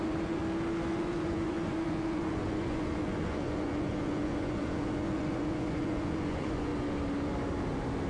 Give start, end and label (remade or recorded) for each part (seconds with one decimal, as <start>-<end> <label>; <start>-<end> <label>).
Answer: 0.0-0.4 remade; 0.4-0.9 recorded; 0.9-6.7 remade; 6.7-8.1 recorded